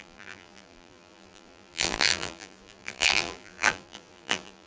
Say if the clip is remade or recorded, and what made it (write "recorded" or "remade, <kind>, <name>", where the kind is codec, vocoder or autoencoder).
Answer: remade, vocoder, BigVGAN v2